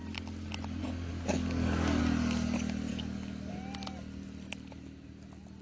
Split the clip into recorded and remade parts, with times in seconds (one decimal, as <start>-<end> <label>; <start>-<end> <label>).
0.0-1.1 recorded; 1.1-2.0 remade; 2.0-2.9 recorded; 2.9-3.5 remade; 3.5-5.6 recorded